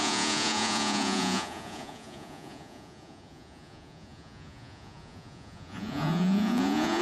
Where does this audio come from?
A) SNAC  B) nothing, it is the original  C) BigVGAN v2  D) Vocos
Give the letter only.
D